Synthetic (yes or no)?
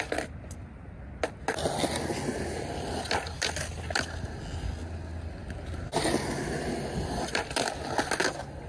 no